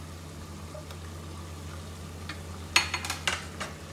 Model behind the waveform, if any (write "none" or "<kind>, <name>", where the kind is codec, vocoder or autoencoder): none